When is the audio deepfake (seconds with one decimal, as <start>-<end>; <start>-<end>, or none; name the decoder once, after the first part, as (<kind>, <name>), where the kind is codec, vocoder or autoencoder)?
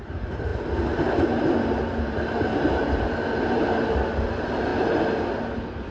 0.0-0.5 (vocoder, BigVGAN v2); 2.0-4.7